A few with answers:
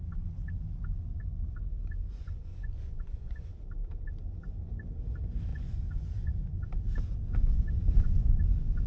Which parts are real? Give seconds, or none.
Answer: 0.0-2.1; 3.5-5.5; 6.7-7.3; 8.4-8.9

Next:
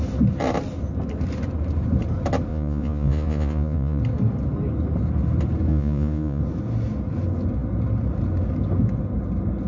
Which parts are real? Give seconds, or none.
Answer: 0.0-2.5; 4.0-5.7; 6.4-9.7

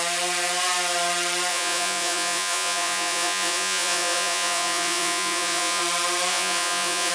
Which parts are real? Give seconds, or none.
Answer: 0.0-1.5; 5.8-6.3

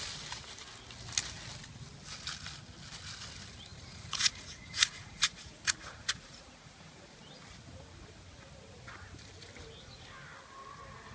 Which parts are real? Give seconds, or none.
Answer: 0.0-3.7; 7.0-11.1

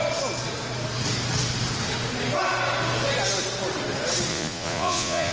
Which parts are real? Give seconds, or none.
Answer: 0.0-4.3

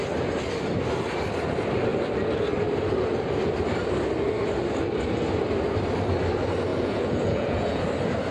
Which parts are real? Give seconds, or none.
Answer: 0.0-6.7; 7.8-8.3

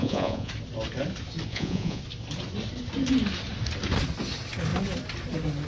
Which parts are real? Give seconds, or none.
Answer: 0.5-1.5; 2.0-5.7